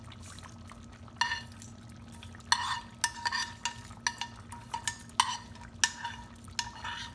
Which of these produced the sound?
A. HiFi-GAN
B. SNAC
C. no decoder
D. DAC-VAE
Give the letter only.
C